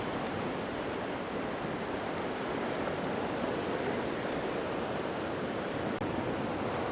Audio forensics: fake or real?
real